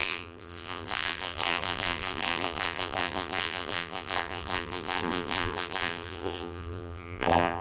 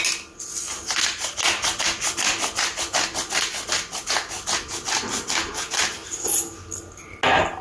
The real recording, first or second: second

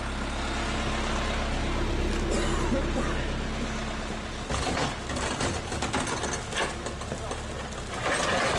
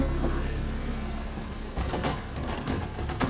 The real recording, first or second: first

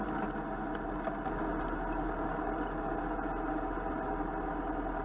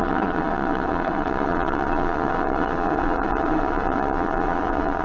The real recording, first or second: first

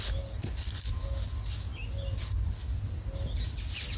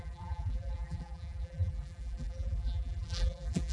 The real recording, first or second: first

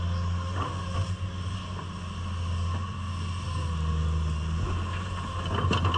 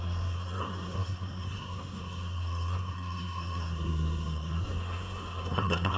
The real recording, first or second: first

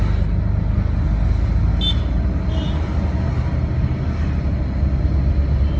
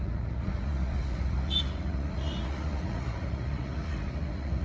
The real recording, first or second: first